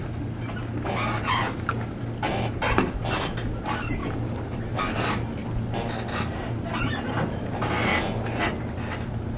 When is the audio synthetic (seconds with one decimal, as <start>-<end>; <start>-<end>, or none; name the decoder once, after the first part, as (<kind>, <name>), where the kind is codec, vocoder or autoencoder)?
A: 4.0-4.8 (vocoder, BigVGAN v2)